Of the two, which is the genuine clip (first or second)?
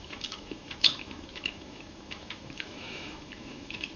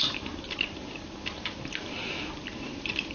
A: second